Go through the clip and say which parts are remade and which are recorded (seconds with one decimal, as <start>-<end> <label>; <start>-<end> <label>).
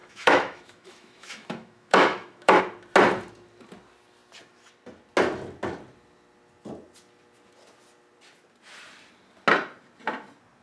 0.0-2.6 remade; 2.6-10.6 recorded